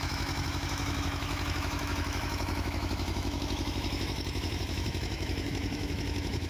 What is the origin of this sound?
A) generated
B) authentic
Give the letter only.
A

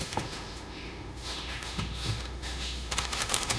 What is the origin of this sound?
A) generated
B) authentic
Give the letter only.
A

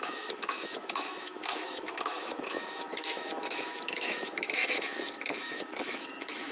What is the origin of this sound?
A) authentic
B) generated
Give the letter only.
B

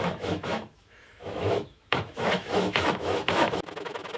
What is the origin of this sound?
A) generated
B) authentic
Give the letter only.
A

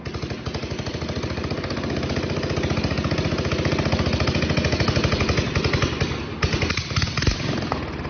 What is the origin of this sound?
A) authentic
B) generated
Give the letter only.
A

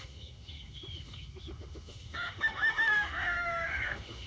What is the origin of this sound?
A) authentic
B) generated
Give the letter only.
B